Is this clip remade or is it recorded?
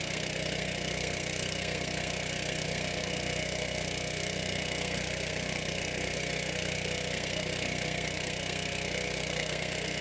remade